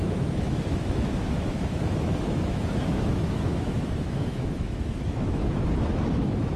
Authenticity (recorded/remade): remade